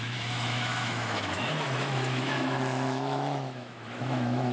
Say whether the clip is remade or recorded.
remade